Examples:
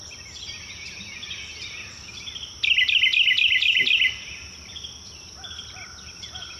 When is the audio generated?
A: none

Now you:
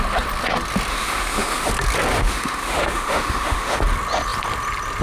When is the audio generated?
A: 0.9-1.7 (autoencoder, DAC-VAE); 2.1-3.8

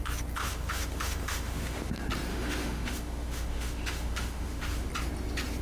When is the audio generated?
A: 0.4-1.9 (autoencoder, DAC-VAE); 2.3-4.9

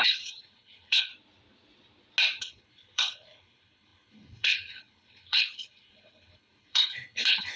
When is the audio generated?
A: 0.0-1.1 (codec, HILCodec); 2.4-7.6

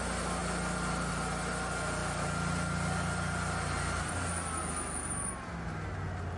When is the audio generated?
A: none

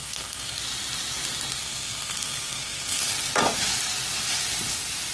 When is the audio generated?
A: 0.0-0.6 (codec, SNAC); 1.6-3.1